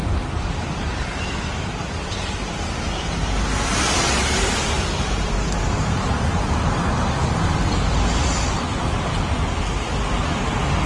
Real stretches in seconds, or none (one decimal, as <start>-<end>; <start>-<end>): 2.9-4.0; 6.4-10.9